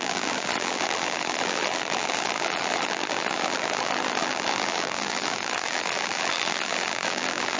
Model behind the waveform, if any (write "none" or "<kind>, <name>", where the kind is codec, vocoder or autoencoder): vocoder, BigVGAN v2